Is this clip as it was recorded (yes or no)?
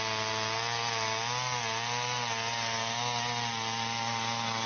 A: yes